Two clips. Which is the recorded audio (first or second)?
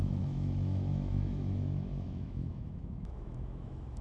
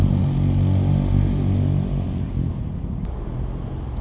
second